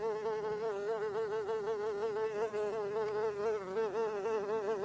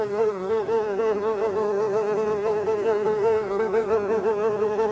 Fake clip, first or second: second